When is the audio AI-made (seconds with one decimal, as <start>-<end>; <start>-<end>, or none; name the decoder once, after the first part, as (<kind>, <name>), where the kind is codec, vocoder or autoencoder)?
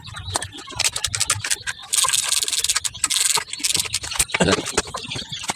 none